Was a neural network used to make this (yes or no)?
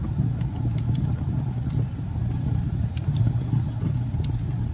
no